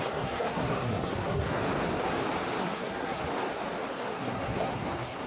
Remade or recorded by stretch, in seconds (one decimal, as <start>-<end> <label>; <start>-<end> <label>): 0.0-1.6 remade; 1.6-2.6 recorded; 2.6-3.2 remade; 3.2-3.9 recorded; 3.9-5.3 remade